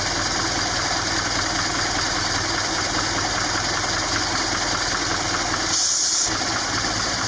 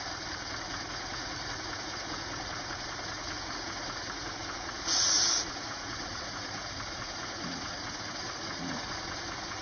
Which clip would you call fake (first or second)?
second